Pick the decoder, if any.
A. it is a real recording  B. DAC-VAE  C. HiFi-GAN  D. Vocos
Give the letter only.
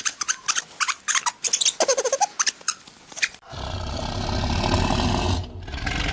A